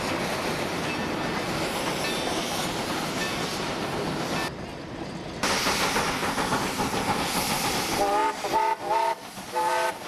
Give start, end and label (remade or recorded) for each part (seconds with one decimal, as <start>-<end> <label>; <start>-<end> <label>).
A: 0.0-10.1 recorded